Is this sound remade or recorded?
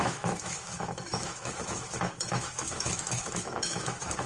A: remade